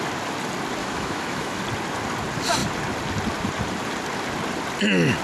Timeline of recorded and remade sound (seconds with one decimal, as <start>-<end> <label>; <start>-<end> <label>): 0.0-0.8 recorded; 0.8-1.6 remade; 1.6-5.2 recorded

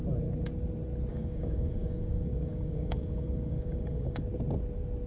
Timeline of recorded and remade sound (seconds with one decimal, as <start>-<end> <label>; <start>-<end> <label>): 0.0-1.1 recorded; 1.1-4.2 remade; 4.2-5.1 recorded

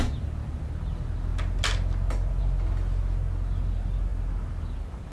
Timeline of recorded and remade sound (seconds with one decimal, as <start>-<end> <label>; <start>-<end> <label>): 0.0-5.1 recorded